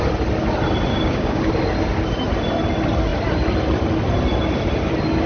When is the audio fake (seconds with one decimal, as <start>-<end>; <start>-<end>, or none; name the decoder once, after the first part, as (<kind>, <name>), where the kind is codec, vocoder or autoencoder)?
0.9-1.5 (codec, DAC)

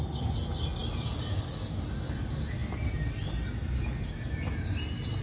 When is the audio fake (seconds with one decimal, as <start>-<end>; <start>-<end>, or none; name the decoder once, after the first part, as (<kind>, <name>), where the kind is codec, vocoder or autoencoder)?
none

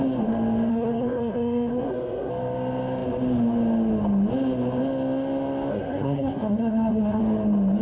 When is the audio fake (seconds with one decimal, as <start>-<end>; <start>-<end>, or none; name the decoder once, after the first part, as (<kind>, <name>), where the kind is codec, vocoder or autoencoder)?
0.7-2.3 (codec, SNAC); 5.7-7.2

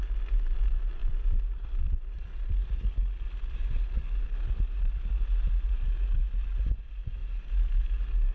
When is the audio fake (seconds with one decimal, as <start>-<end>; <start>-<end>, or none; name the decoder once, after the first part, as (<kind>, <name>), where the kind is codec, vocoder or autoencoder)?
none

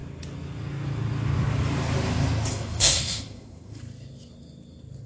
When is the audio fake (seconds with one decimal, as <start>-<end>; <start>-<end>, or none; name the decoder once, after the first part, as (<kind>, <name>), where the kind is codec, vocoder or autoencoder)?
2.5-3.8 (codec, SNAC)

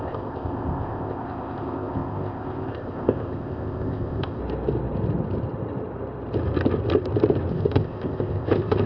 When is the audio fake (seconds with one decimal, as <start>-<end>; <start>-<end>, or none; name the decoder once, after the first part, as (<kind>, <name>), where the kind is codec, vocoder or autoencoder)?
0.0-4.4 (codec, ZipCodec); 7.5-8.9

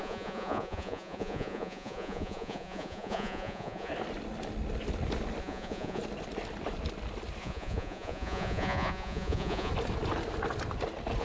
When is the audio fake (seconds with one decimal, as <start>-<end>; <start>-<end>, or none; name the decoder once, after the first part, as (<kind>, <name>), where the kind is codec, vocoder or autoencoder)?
0.0-3.9 (vocoder, Vocos); 5.4-6.0; 7.4-9.7